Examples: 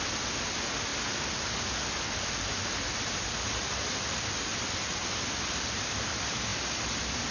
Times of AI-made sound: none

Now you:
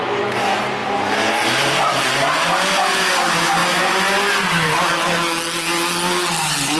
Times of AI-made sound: none

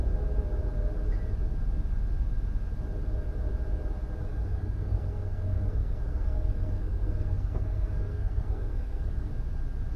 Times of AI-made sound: 4.2-9.3 (codec, SNAC)

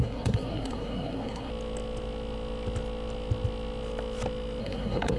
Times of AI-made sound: 0.0-1.5 (codec, SNAC); 4.6-5.2

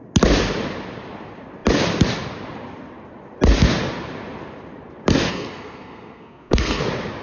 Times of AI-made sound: 5.3-6.8 (codec, SNAC)

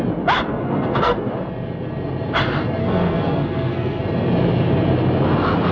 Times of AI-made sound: 0.5-1.3 (codec, SNAC); 2.8-4.0